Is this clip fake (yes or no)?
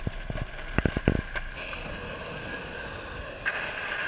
no